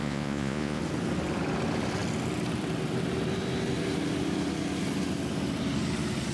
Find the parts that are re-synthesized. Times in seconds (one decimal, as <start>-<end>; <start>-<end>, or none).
0.0-0.8